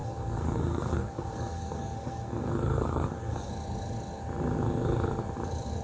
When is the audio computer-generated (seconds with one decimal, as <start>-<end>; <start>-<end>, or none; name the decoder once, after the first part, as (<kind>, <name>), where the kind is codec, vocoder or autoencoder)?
0.0-3.5 (codec, SNAC)